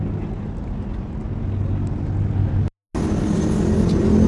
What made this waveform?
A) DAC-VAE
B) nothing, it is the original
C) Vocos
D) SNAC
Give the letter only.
B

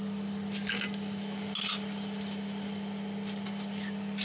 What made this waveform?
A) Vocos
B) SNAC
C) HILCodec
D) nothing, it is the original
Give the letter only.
D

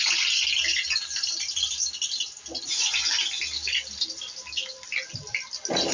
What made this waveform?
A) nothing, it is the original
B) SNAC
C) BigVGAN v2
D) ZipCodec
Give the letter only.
A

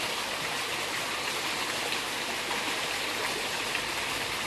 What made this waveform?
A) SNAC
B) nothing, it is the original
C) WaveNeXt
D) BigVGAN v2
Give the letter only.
B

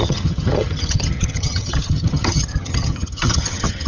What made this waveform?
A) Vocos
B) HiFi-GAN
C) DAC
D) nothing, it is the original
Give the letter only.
B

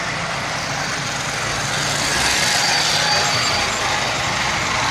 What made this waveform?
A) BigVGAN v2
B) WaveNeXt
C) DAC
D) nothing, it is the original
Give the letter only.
D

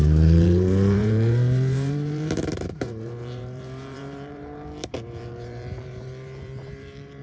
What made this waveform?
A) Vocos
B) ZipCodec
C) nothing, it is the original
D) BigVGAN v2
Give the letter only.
D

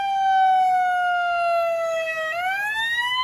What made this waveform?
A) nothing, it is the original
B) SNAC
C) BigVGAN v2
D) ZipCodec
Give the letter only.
A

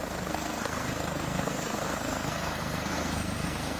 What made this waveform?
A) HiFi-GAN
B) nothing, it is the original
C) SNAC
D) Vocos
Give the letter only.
C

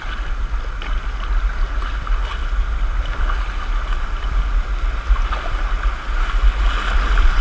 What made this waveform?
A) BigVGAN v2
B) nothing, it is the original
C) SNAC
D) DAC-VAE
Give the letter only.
B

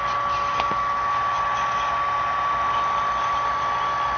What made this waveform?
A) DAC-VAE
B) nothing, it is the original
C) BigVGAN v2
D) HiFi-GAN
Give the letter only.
B